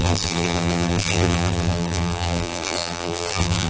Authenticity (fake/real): fake